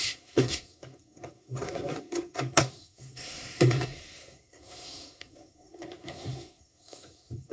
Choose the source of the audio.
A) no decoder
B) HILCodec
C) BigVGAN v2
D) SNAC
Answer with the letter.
D